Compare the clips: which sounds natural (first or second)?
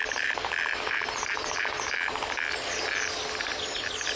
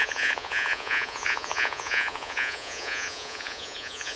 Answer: first